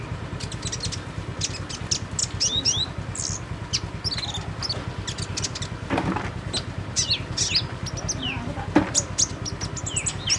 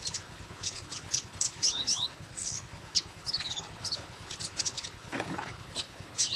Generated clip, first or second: second